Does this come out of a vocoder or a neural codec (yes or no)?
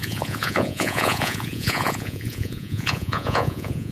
yes